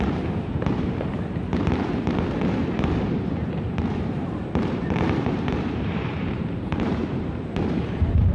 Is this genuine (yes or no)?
no